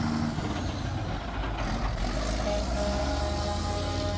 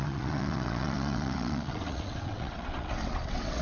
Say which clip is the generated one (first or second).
second